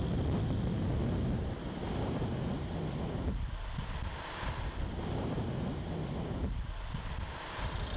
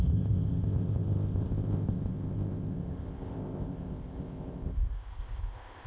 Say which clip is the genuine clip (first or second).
first